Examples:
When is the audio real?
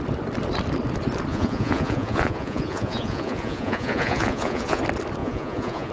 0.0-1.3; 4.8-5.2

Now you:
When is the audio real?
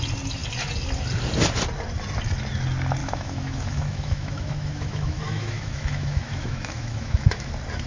0.0-3.0; 7.5-7.9